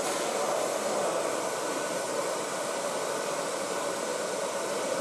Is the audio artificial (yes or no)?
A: no